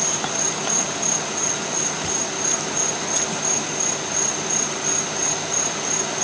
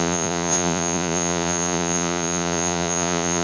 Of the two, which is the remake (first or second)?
second